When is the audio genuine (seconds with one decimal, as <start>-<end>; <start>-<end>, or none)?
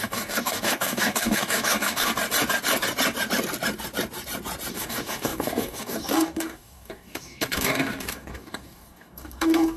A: 2.1-4.7